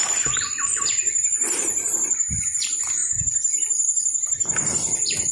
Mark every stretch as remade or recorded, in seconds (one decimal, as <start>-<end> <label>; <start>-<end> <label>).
0.0-5.3 recorded